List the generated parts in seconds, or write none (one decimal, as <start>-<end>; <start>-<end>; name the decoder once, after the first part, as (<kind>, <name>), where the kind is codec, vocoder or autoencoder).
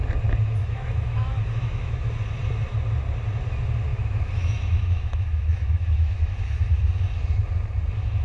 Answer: 0.6-2.1 (autoencoder, DAC-VAE); 3.9-6.8